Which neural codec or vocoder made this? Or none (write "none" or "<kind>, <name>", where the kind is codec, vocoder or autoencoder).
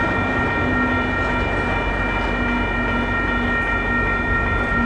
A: none